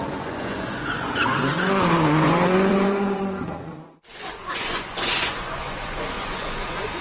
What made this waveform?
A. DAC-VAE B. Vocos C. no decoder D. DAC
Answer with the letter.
B